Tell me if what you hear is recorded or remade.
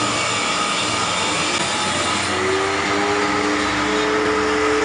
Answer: recorded